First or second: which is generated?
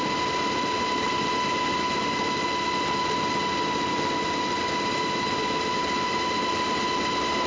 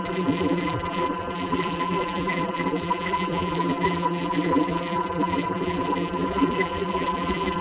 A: second